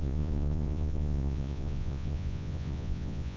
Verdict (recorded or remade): remade